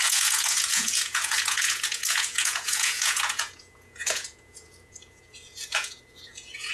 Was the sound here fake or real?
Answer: fake